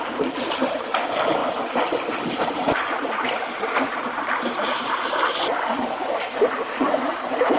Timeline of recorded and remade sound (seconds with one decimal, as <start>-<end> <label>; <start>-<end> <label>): 0.0-1.4 remade; 1.4-2.1 recorded; 2.1-7.6 remade